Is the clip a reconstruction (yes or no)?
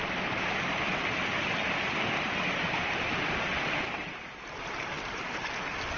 no